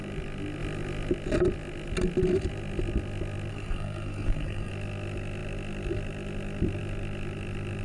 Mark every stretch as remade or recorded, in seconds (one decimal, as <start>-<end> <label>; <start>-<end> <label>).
0.0-3.5 recorded; 3.5-4.7 remade; 4.7-7.8 recorded